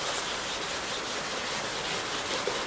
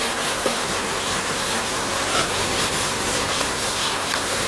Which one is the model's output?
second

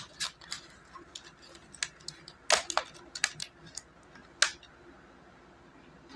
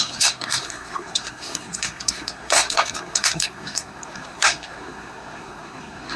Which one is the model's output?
second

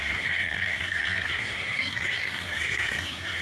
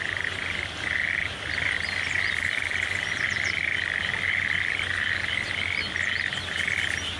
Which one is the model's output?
first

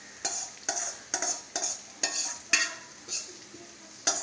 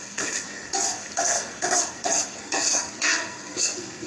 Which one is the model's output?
second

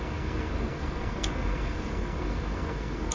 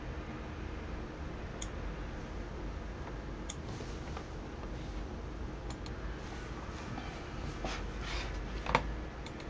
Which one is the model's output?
first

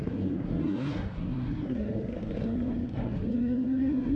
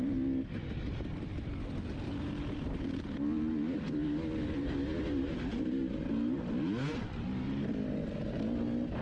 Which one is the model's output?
first